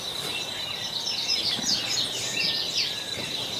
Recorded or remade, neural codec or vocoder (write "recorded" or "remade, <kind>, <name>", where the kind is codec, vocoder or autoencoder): remade, vocoder, BigVGAN v2